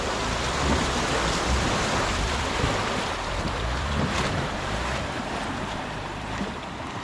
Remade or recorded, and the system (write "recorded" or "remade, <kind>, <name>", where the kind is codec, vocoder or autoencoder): remade, vocoder, BigVGAN v2